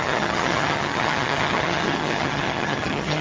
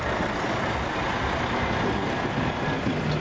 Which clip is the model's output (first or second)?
first